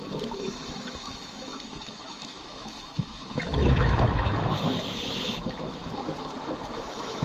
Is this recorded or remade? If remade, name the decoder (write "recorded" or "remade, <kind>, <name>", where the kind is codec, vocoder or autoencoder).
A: remade, autoencoder, DAC-VAE